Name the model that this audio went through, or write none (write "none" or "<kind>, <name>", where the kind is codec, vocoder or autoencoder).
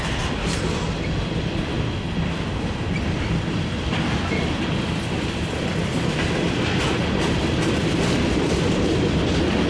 none